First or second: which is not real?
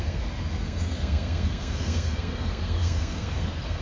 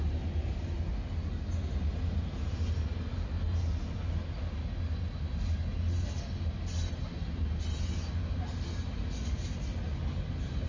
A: first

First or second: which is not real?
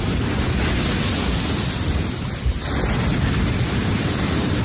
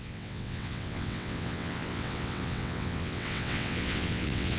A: second